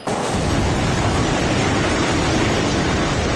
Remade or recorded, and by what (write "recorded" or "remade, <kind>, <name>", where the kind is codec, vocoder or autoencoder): recorded